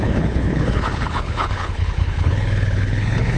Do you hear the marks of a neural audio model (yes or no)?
yes